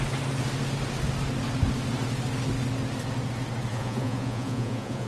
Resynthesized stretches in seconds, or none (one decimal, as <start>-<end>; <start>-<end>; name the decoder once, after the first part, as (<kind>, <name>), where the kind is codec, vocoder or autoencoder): 3.7-5.1 (vocoder, Vocos)